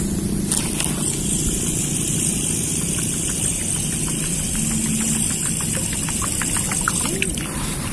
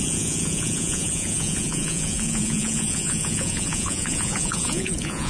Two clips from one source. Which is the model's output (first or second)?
second